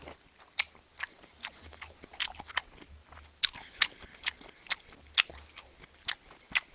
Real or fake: real